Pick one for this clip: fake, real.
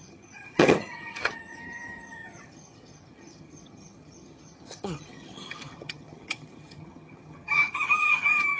fake